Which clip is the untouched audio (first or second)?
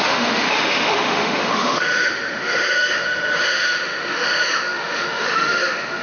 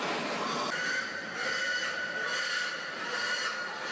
second